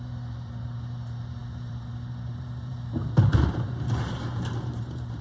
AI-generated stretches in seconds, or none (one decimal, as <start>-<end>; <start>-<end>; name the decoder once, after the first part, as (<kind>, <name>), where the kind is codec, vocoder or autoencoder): 0.0-5.2 (vocoder, BigVGAN v2)